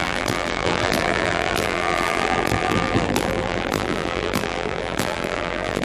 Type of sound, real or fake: fake